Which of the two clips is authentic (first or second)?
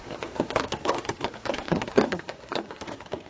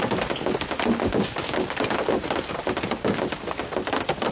second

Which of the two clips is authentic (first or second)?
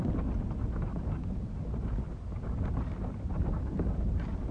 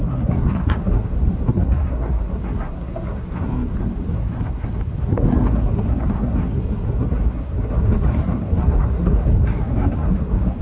first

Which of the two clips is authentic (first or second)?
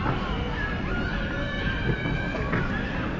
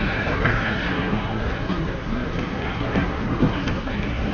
first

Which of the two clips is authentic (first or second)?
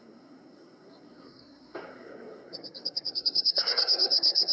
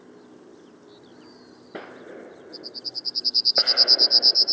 second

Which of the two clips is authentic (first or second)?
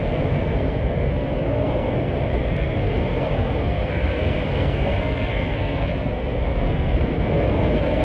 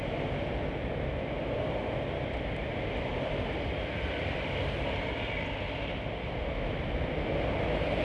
second